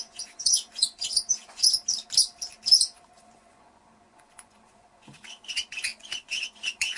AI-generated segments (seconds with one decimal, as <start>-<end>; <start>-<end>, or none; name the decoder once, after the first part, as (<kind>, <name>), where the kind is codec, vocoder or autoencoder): 0.0-1.6 (vocoder, Vocos); 3.2-7.0